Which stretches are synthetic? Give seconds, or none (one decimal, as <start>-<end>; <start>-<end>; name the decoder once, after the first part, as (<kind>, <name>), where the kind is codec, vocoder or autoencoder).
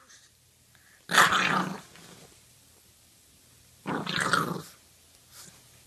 2.2-4.5 (vocoder, BigVGAN v2)